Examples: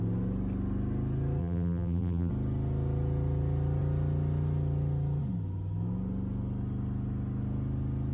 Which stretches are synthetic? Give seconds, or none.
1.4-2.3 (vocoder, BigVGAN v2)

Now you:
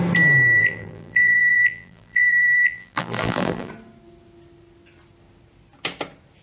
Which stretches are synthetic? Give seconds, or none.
0.6-3.7 (vocoder, BigVGAN v2)

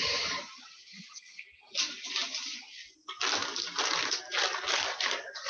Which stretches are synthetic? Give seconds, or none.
0.0-0.9 (vocoder, BigVGAN v2); 4.2-5.5

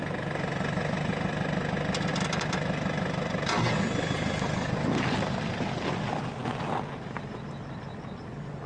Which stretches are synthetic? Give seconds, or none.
2.1-5.0 (vocoder, BigVGAN v2)